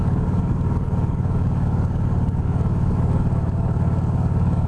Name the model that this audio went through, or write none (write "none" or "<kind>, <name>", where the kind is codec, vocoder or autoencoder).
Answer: codec, DAC